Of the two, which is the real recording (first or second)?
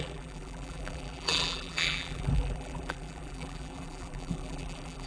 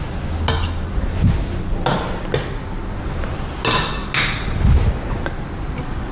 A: second